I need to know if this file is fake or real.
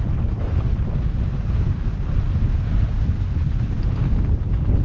real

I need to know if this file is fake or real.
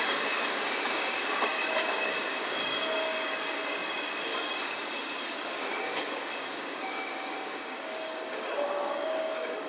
fake